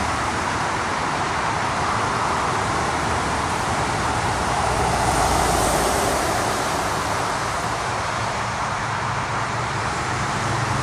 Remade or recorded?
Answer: remade